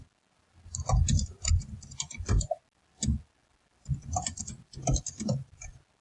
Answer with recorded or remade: recorded